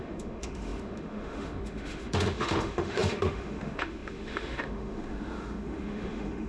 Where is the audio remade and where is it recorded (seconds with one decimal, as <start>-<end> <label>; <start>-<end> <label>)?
0.0-6.5 remade